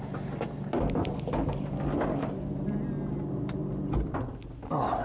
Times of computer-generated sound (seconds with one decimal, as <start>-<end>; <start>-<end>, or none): none